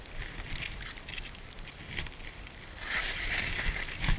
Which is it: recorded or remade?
recorded